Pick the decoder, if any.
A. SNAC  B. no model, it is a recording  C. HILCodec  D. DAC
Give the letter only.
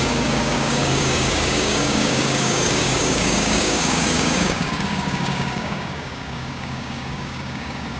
D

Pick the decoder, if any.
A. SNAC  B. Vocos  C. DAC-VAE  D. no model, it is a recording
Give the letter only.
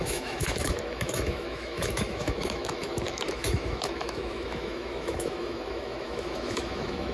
C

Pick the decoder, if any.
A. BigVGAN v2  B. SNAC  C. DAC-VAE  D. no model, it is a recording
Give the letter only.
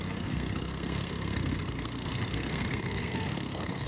B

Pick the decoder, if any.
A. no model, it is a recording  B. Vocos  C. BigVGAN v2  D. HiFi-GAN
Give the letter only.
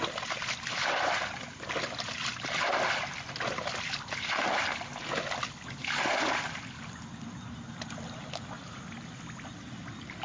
A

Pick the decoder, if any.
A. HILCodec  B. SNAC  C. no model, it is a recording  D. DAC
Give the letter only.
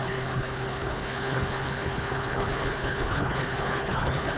A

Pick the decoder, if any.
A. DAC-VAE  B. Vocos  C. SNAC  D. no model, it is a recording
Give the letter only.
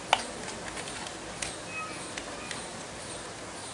D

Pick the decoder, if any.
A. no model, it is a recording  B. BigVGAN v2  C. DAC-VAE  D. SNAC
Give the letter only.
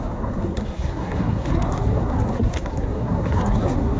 D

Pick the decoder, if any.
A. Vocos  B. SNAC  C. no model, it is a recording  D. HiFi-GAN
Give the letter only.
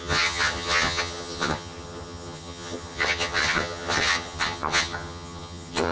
D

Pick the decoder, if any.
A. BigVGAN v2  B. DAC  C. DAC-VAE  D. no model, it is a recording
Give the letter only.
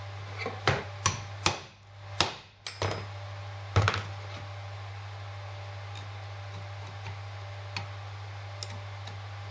D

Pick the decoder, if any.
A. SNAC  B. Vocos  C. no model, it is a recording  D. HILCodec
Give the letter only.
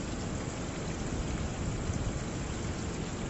C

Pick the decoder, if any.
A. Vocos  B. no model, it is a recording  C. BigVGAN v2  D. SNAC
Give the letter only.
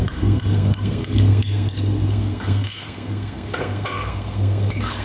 D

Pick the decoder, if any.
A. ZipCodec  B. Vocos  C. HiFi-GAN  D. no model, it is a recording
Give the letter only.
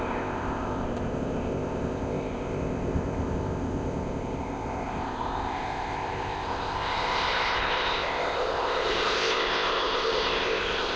A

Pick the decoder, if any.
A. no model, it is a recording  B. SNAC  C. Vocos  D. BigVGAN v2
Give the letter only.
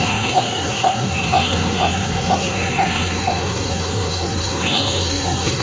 B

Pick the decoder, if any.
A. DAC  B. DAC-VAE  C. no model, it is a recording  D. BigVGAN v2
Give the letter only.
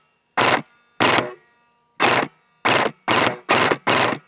C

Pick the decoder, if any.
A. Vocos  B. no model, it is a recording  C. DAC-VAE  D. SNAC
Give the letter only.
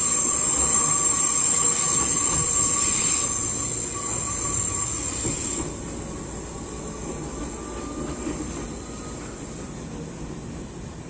B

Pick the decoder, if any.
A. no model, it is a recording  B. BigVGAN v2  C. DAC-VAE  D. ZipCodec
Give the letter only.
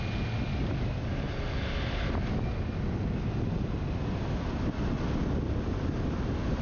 A